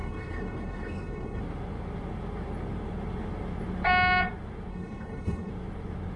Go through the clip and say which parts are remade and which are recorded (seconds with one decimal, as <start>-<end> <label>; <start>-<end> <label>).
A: 0.0-1.4 remade; 1.4-4.7 recorded; 4.7-5.5 remade; 5.5-6.2 recorded